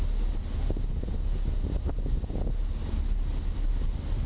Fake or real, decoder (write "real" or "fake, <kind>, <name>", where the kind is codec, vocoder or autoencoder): real